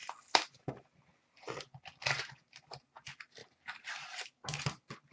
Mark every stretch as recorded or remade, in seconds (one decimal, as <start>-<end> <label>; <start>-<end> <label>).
0.0-5.1 recorded